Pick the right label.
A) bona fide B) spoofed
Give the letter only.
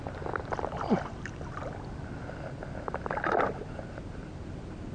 A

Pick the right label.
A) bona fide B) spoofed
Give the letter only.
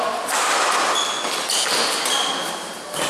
A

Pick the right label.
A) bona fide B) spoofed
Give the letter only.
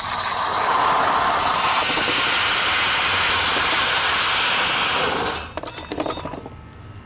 A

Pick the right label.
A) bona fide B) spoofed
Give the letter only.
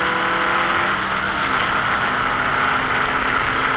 A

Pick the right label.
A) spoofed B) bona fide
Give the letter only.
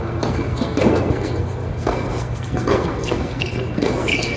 A